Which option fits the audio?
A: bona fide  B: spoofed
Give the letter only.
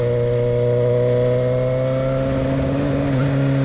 A